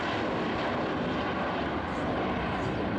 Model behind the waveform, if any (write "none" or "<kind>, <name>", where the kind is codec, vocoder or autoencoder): none